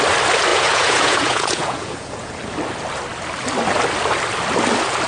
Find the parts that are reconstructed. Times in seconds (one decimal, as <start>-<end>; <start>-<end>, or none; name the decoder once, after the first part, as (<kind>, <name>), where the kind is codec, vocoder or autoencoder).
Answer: 0.5-2.3 (vocoder, Vocos)